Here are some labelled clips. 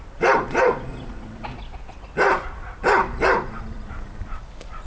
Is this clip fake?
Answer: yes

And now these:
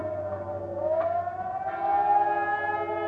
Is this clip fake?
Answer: no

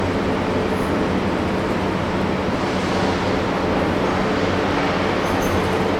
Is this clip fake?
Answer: no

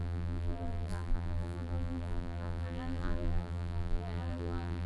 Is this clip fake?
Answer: yes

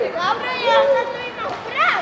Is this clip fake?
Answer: no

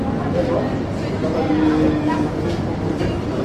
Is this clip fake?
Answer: no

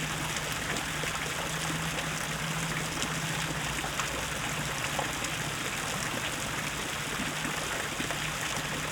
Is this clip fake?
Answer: no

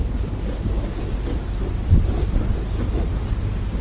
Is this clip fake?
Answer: no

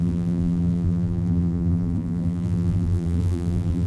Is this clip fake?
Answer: yes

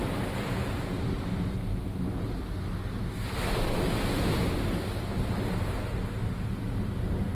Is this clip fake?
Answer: no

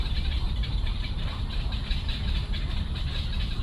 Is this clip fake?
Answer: no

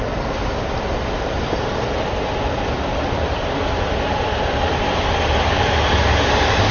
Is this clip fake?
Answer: yes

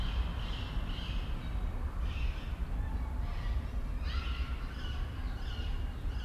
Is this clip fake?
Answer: yes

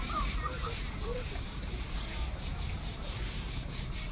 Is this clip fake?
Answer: yes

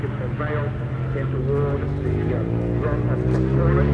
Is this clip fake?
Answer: no